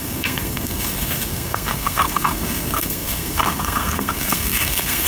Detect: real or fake fake